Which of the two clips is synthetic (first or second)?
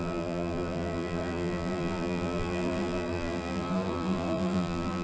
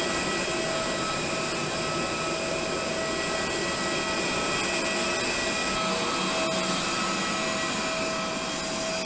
first